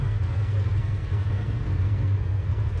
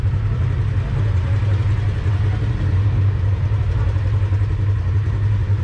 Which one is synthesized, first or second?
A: first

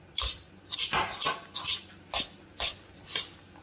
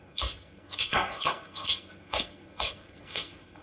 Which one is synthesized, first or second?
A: second